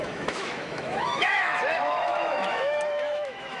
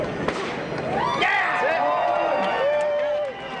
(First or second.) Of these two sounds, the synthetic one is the first